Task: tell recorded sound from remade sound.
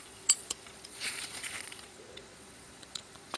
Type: remade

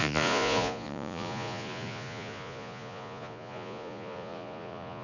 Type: remade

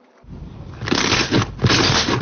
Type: recorded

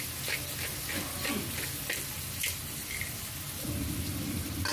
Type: recorded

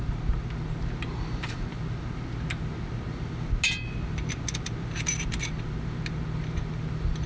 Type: recorded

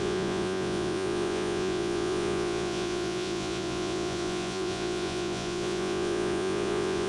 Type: remade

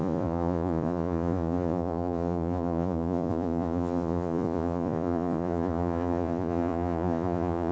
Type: remade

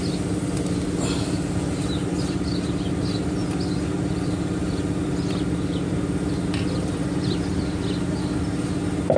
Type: recorded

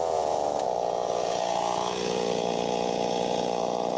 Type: remade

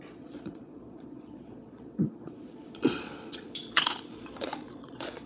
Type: remade